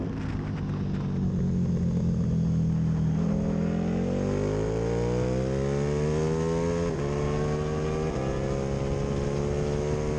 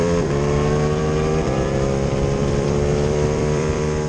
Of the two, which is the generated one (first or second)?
second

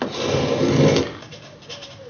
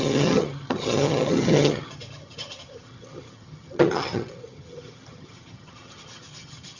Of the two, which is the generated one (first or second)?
second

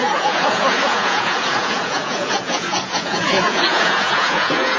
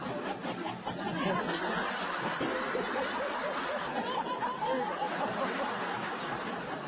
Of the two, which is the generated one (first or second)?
first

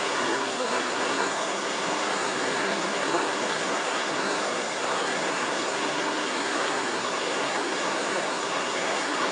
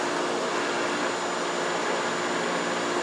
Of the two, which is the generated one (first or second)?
first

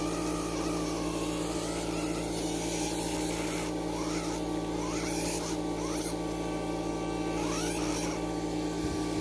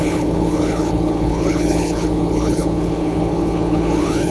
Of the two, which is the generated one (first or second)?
second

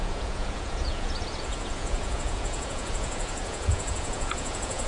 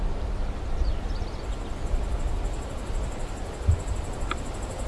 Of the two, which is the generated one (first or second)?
first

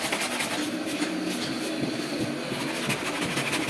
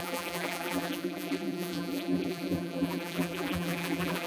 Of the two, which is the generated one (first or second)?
second